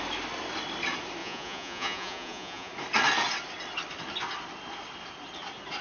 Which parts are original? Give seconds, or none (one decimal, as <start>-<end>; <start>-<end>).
0.0-1.2; 2.7-5.8